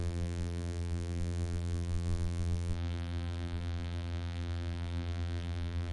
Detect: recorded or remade remade